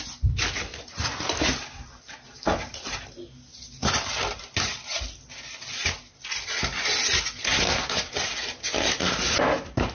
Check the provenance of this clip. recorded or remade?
recorded